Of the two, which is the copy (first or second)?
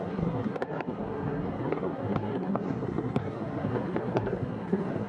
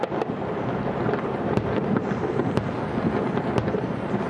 first